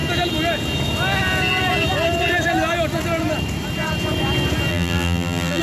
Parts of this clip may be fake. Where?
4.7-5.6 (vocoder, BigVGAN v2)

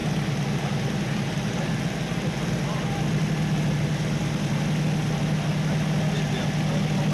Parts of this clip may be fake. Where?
none

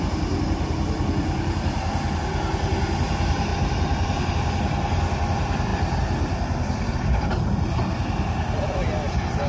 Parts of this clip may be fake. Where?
3.5-4.3 (vocoder, BigVGAN v2)

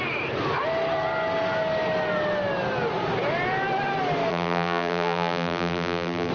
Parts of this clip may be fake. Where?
4.3-6.3 (vocoder, BigVGAN v2)

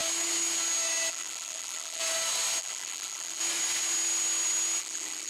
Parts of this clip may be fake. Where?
1.1-2.0 (vocoder, BigVGAN v2); 2.6-3.4; 4.8-5.3

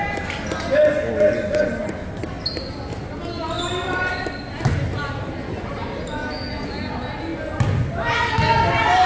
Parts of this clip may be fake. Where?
none